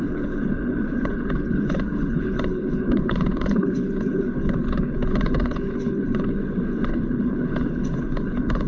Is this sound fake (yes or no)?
yes